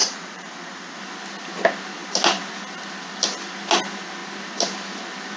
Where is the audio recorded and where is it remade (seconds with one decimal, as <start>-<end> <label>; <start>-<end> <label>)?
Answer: 0.0-1.0 remade; 1.0-5.4 recorded